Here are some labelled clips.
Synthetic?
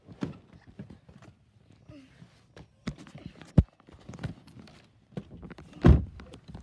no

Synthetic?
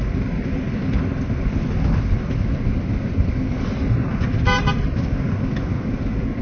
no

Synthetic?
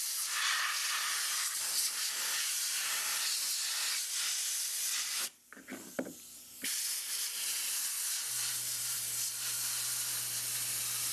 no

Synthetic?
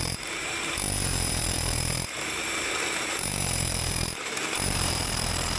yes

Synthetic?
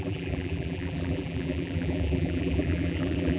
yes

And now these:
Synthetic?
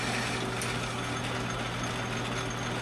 no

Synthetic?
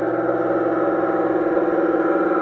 no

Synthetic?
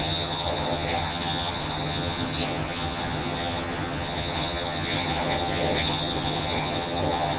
yes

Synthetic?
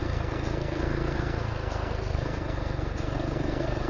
yes